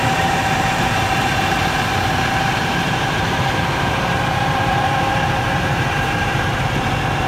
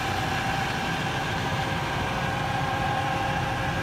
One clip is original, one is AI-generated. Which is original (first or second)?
second